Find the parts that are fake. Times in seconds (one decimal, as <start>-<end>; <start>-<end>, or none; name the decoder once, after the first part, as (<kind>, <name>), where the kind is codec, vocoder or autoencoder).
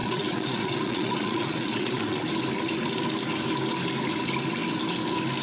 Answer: 0.0-2.3 (vocoder, Vocos)